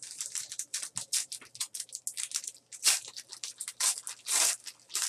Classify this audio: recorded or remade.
recorded